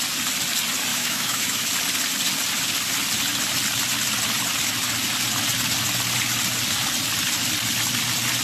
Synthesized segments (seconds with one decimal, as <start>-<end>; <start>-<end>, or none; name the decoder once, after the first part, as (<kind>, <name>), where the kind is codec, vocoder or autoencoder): 0.9-1.7 (autoencoder, DAC-VAE)